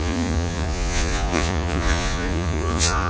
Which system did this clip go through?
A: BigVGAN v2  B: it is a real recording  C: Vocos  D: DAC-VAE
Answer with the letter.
C